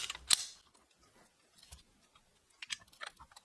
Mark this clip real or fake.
real